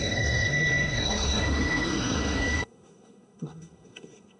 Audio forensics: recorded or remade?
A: remade